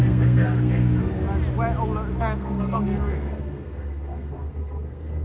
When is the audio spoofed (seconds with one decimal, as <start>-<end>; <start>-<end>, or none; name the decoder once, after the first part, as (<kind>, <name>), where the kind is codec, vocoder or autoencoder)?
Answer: 0.0-1.2 (codec, SNAC); 2.2-5.2